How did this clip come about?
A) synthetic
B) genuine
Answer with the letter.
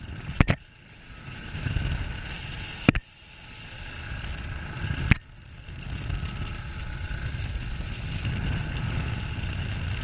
B